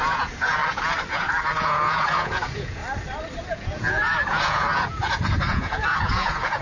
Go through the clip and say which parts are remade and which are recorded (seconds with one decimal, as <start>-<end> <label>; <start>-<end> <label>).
0.0-0.6 remade; 0.6-1.1 recorded; 1.1-2.8 remade; 2.8-3.4 recorded; 3.4-6.6 remade